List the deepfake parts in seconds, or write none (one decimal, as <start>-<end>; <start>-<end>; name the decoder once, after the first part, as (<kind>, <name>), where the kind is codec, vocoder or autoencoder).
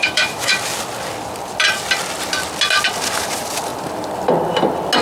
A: 0.0-0.5 (autoencoder, DAC-VAE)